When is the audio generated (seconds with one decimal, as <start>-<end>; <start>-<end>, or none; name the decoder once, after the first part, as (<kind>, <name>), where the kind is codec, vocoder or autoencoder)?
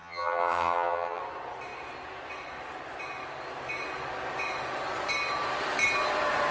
0.0-1.2 (vocoder, HiFi-GAN)